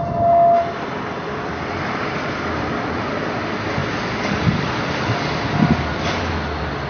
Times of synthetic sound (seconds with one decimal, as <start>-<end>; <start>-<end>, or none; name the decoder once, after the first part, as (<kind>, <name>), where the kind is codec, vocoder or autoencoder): 3.8-6.3 (vocoder, BigVGAN v2)